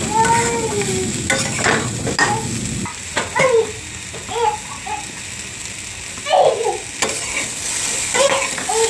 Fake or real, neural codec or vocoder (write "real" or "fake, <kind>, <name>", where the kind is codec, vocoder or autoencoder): real